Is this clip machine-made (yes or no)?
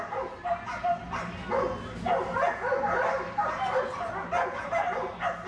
no